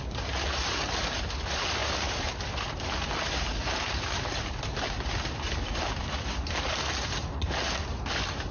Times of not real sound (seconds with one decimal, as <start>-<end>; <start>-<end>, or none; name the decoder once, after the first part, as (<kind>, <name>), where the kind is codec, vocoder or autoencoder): none